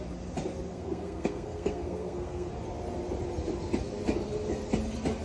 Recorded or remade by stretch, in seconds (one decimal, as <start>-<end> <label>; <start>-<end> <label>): 0.0-0.7 recorded; 0.7-2.5 remade; 2.5-5.2 recorded